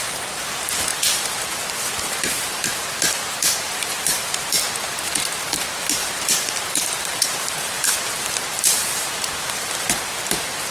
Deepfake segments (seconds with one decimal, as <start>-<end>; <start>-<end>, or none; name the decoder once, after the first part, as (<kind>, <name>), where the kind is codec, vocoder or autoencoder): 0.9-4.5 (vocoder, BigVGAN v2); 6.0-9.9